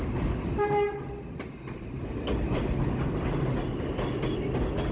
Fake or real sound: real